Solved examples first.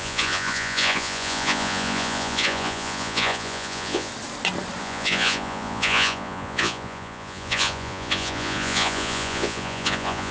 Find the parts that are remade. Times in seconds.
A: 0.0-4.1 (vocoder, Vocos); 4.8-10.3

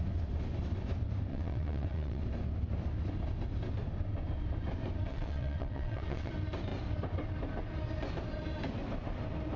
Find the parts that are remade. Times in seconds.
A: 1.3-2.2 (vocoder, WaveNeXt); 5.1-6.3